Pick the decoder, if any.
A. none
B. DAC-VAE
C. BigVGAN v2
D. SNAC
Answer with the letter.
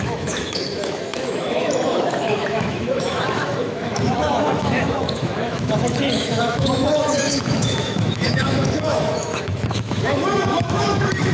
B